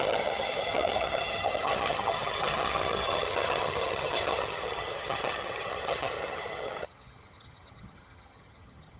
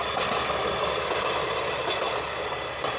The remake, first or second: first